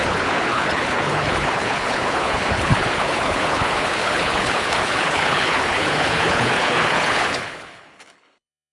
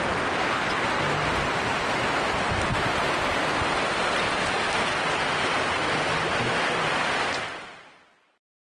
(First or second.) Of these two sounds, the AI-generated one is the first